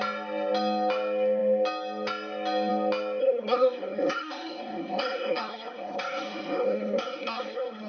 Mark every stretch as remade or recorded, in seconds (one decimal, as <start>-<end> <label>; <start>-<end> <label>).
0.0-3.2 recorded; 3.2-7.9 remade